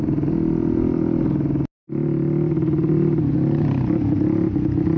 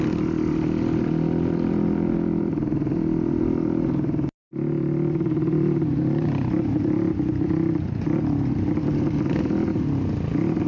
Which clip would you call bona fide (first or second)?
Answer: first